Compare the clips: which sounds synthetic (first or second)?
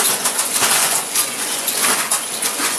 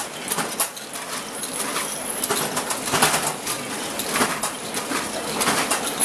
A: first